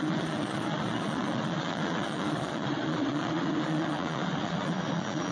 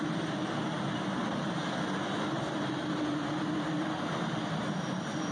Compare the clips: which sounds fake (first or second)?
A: first